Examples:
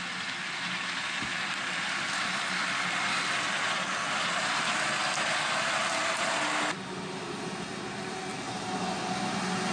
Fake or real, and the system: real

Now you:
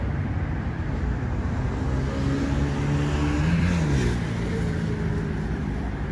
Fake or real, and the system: real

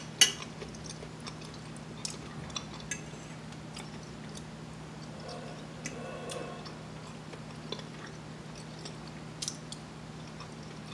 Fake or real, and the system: real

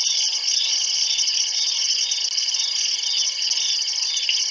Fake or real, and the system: real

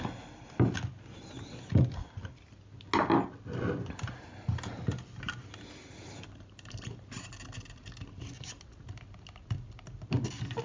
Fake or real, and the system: real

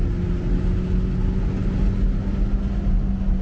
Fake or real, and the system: real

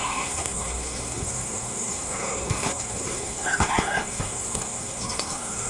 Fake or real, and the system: fake, codec, SNAC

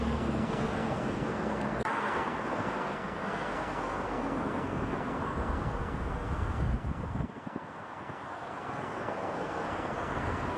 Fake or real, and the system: fake, codec, SNAC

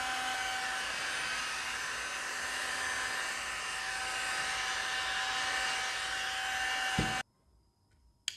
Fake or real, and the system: real